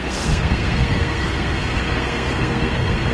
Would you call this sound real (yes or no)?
no